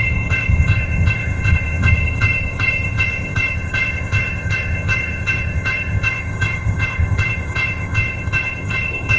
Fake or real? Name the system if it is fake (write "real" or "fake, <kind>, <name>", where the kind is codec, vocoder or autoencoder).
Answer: fake, codec, ZipCodec